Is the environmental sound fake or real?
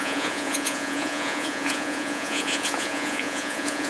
fake